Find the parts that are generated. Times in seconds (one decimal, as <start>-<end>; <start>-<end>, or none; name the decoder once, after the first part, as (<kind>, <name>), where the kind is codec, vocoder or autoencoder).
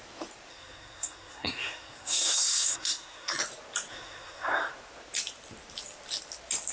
0.5-3.4 (codec, SNAC); 3.9-4.7